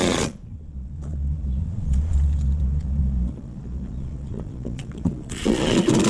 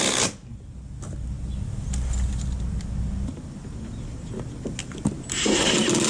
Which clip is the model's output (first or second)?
first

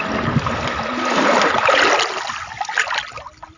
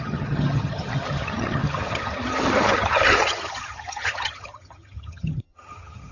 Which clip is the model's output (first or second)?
second